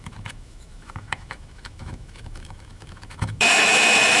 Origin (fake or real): fake